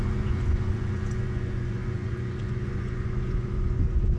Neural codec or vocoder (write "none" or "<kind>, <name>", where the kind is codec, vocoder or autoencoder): vocoder, Vocos